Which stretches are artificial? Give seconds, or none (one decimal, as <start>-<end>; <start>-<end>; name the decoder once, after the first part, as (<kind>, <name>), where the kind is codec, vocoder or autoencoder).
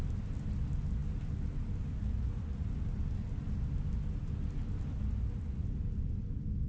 none